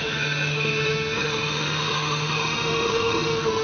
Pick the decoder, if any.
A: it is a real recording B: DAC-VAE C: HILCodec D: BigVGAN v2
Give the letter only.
B